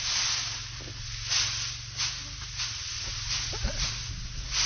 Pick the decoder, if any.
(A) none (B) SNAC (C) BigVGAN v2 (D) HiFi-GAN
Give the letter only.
A